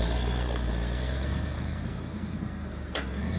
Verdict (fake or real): fake